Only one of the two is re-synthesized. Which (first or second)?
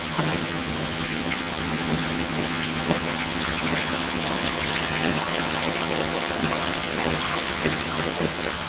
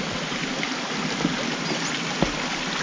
first